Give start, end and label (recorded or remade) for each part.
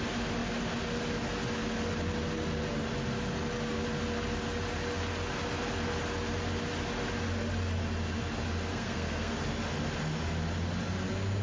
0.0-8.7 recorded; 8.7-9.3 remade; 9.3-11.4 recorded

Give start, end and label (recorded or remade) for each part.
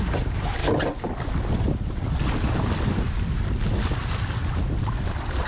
0.0-5.5 recorded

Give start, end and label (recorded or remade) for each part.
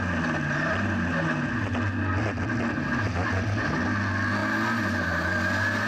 0.0-5.9 recorded